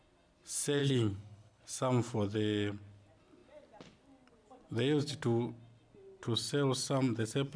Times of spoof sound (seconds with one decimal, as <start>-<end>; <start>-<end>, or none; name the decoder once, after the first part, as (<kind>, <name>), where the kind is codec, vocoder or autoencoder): 0.8-1.6 (codec, HILCodec)